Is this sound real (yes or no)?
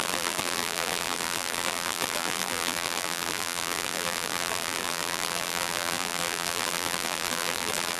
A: no